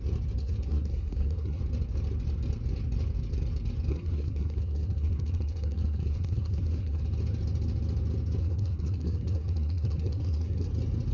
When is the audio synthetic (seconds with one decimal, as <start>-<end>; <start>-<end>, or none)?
0.4-1.6; 3.9-7.0; 8.4-10.7